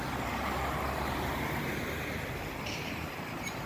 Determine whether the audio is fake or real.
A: real